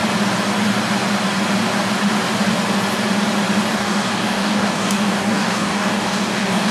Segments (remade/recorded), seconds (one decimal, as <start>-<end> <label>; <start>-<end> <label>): 0.0-3.7 recorded; 3.7-6.7 remade

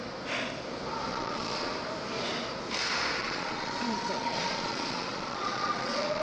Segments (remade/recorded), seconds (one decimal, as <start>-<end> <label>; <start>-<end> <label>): 0.0-1.1 recorded; 1.1-1.7 remade; 1.7-3.2 recorded; 3.2-6.2 remade

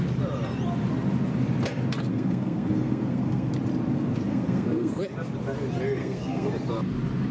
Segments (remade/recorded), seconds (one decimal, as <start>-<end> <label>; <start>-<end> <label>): 0.0-2.1 recorded; 2.1-3.5 remade; 3.5-4.3 recorded; 4.3-4.9 remade; 4.9-6.0 recorded; 6.0-6.5 remade; 6.5-7.3 recorded

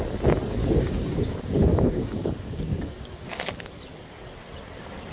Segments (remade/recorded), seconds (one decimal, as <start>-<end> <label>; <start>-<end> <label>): 0.0-0.6 recorded; 0.6-3.7 remade; 3.7-5.1 recorded

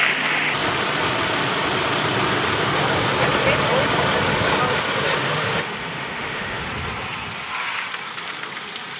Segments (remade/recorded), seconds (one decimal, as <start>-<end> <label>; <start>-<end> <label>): 0.0-5.2 recorded; 5.2-6.6 remade; 6.6-9.0 recorded

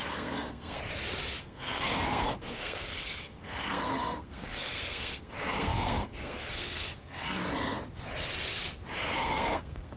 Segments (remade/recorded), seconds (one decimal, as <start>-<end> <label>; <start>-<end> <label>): 0.0-0.8 remade; 0.8-1.4 recorded; 1.4-7.4 remade; 7.4-9.1 recorded; 9.1-10.0 remade

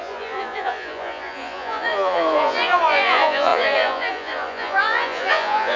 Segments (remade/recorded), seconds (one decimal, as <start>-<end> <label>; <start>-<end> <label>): 0.0-5.8 remade